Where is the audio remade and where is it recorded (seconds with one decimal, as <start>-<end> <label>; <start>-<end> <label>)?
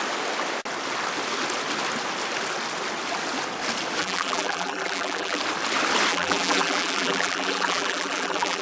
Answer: 0.0-4.0 recorded; 4.0-5.4 remade; 5.4-6.1 recorded; 6.1-8.6 remade